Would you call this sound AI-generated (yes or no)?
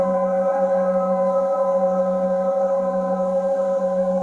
yes